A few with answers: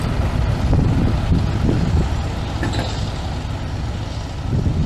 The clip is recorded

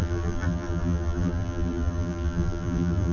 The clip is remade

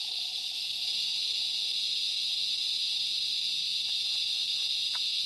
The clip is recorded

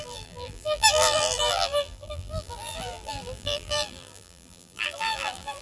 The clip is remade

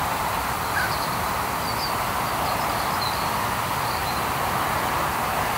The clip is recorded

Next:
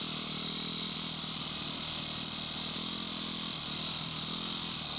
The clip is recorded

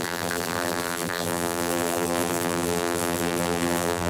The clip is remade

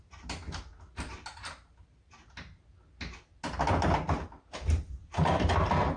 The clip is recorded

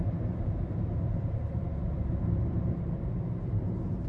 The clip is remade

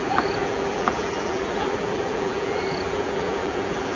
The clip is remade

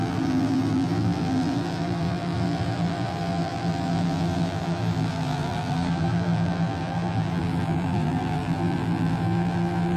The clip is remade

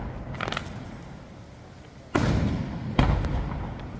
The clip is recorded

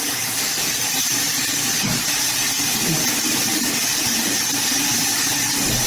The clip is recorded